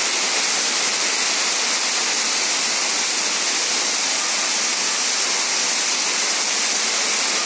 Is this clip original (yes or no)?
yes